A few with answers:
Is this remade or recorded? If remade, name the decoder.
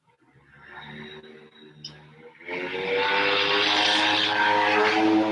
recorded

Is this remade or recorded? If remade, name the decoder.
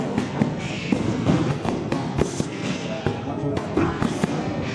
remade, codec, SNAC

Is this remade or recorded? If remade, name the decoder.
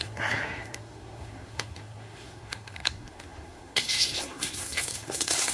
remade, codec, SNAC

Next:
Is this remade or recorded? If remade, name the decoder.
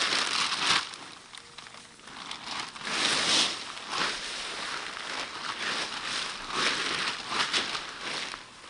recorded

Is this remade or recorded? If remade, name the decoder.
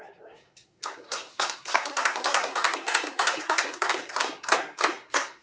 remade, codec, SNAC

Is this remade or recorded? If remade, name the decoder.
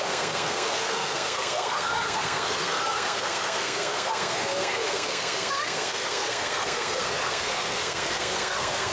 remade, codec, SNAC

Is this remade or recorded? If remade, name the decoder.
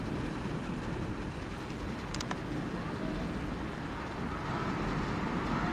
recorded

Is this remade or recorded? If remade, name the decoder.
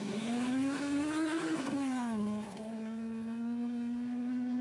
remade, codec, SNAC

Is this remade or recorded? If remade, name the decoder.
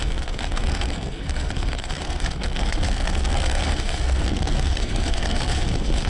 remade, codec, SNAC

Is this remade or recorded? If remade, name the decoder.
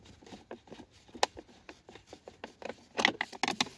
recorded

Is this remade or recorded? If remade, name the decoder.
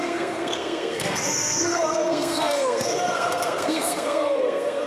remade, codec, SNAC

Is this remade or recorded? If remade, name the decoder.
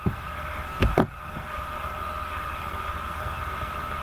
remade, codec, SNAC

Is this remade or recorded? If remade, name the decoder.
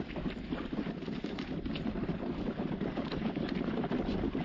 recorded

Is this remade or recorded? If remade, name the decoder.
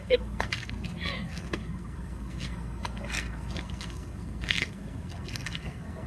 remade, codec, SNAC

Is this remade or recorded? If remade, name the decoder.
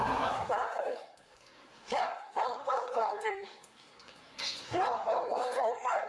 remade, codec, SNAC